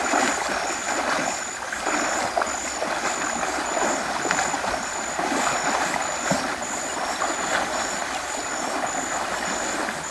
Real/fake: real